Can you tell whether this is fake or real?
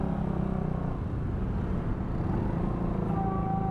real